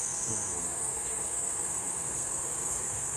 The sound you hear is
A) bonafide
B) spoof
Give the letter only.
B